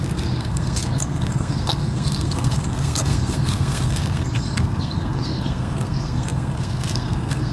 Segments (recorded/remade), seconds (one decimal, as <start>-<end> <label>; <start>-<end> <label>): 0.0-7.5 remade